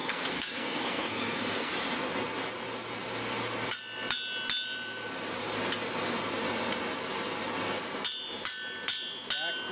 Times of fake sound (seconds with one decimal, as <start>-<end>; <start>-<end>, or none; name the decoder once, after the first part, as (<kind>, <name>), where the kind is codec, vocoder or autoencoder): 0.0-1.7 (codec, SNAC)